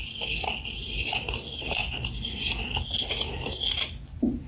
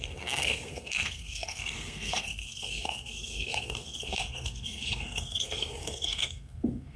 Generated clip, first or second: second